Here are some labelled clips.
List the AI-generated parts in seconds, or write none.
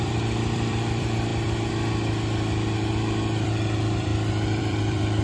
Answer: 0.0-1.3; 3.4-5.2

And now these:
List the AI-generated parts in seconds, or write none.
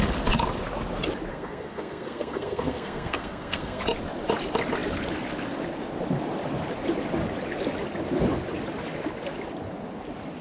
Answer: 1.3-3.8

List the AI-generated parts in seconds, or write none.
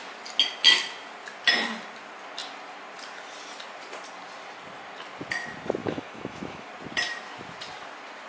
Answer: 5.8-6.7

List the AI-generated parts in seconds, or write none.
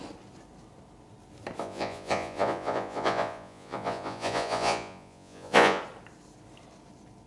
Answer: 1.6-5.8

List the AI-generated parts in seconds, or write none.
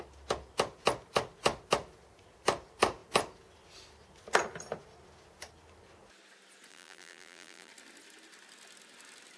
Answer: 6.7-7.7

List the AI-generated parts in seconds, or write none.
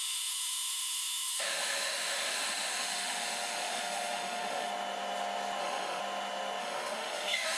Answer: 0.0-4.7; 5.6-6.0; 6.6-7.6